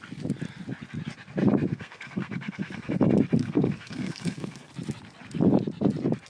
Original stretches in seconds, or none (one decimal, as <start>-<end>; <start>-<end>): 0.0-1.7; 2.9-3.4; 4.7-6.3